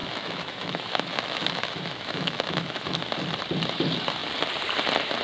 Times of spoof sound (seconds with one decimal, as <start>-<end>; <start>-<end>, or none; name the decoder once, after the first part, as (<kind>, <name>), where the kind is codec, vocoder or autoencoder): 0.0-3.1 (autoencoder, DAC-VAE)